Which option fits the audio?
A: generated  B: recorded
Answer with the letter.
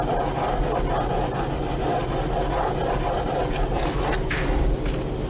B